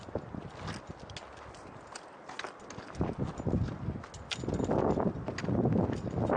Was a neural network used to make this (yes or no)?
no